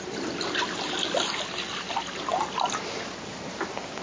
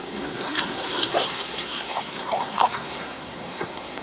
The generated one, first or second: second